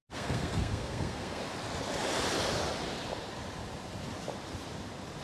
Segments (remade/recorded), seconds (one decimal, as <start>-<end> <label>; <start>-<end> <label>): 0.0-1.4 remade; 1.4-5.2 recorded